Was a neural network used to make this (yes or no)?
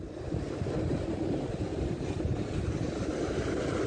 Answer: no